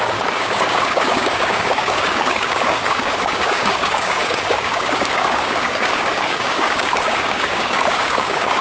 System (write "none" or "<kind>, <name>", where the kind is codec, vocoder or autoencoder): codec, DAC